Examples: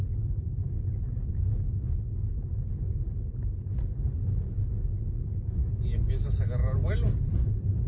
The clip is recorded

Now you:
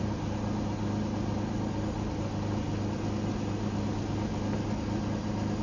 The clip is recorded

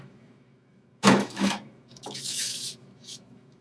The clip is remade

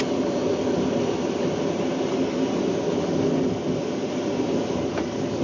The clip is recorded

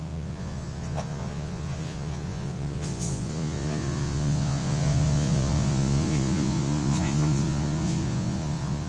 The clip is remade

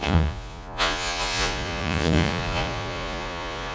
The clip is remade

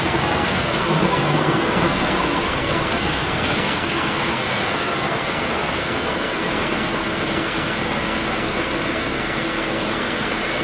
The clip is remade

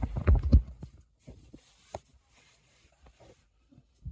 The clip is recorded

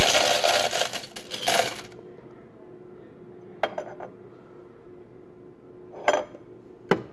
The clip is recorded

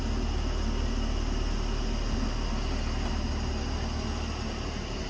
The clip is recorded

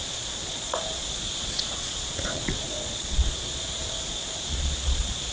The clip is remade